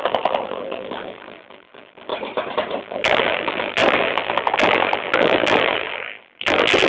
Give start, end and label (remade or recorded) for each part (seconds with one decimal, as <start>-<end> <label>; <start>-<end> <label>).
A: 0.0-2.1 remade; 2.1-2.8 recorded; 2.8-6.9 remade